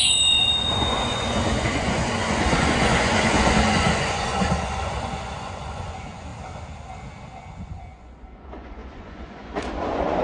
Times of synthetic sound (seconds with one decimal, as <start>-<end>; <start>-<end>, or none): 0.0-6.3; 7.4-10.2

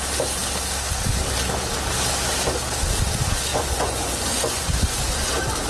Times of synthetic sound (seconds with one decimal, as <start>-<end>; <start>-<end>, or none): 3.5-5.3

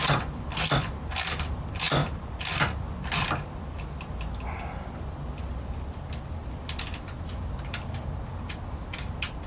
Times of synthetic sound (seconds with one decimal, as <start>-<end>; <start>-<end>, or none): none

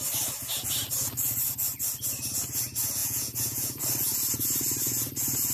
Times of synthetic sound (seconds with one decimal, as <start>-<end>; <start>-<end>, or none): 3.0-3.8

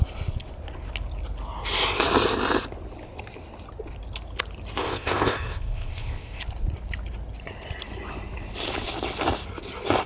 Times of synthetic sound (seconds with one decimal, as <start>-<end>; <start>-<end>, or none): 4.8-6.4

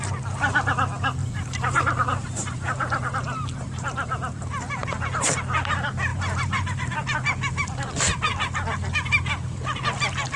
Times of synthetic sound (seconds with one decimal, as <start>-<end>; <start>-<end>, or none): 1.2-5.3; 6.1-6.9